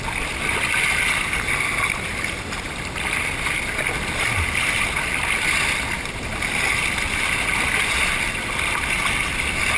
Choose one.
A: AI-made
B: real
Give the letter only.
B